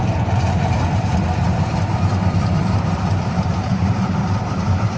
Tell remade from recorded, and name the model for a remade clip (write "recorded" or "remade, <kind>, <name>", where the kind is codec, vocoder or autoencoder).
remade, vocoder, BigVGAN v2